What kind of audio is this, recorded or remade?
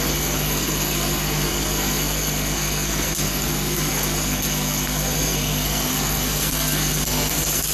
remade